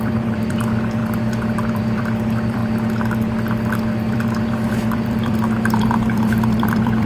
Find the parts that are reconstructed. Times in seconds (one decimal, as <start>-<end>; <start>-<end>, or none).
0.0-1.0; 1.7-2.6; 4.1-7.1